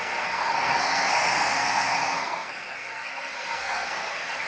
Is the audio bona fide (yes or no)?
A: no